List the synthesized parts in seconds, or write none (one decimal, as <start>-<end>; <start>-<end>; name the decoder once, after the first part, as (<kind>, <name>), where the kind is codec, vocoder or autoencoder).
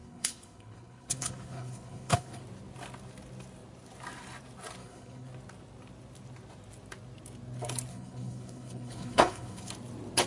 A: 0.0-2.4 (codec, HILCodec); 4.8-5.3; 7.9-9.7